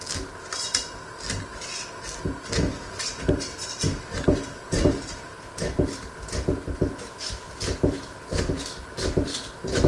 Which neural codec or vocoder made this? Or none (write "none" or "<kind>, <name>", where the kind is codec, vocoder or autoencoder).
none